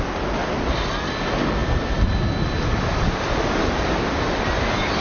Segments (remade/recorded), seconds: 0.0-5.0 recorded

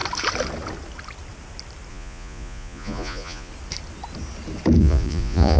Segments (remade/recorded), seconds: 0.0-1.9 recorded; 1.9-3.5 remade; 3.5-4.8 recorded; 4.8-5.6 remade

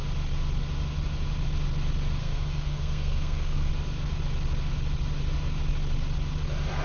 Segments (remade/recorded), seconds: 0.0-2.2 recorded; 2.2-3.7 remade; 3.7-6.8 recorded